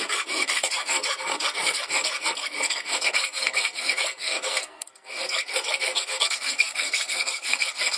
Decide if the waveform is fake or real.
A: fake